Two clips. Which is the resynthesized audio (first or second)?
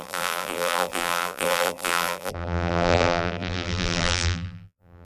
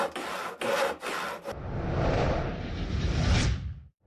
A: first